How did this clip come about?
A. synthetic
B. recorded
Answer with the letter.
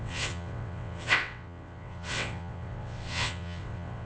A